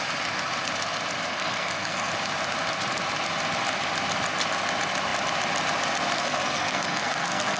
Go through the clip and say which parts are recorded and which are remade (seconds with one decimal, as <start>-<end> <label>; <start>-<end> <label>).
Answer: 0.0-1.3 recorded; 1.3-2.1 remade; 2.1-6.2 recorded; 6.2-7.6 remade